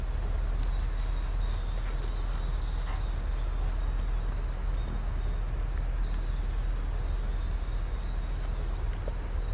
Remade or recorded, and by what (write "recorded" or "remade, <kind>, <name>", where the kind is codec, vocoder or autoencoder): recorded